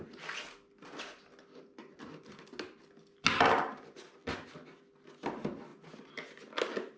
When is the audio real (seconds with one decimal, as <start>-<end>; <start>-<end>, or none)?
0.0-7.0